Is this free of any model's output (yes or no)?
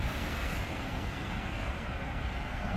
no